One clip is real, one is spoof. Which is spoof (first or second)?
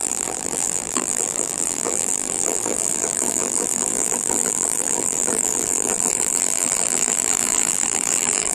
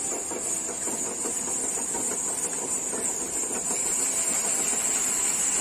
first